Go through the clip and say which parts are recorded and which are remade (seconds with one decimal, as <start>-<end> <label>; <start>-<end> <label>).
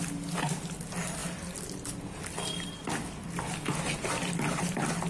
0.0-5.1 recorded